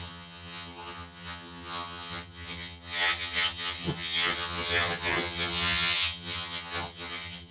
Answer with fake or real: fake